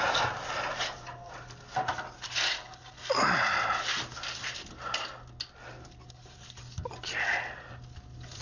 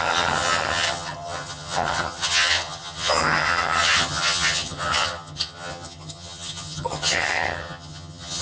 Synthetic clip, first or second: second